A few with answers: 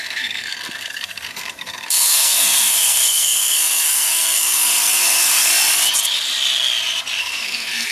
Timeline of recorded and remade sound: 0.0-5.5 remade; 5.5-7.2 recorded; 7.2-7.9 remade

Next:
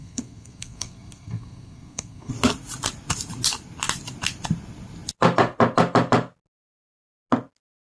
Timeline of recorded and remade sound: 0.0-2.3 remade; 2.3-7.9 recorded

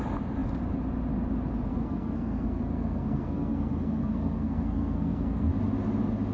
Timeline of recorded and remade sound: 0.0-1.7 recorded; 1.7-5.5 remade; 5.5-6.3 recorded